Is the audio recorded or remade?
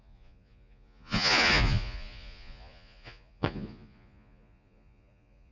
remade